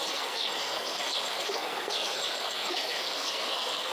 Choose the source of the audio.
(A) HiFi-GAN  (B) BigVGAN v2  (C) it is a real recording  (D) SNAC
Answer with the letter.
D